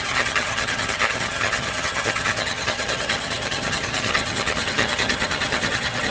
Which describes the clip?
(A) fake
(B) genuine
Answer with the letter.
A